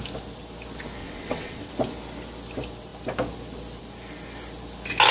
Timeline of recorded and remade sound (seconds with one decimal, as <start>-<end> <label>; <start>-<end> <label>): 0.0-1.0 recorded; 1.0-1.7 remade; 1.7-5.1 recorded